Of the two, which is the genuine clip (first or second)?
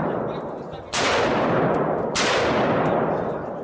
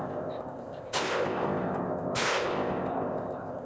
first